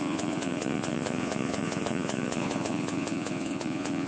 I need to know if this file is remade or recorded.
remade